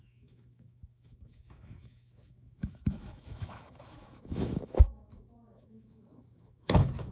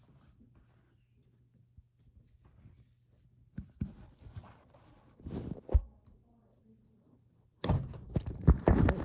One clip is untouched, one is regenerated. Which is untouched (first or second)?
second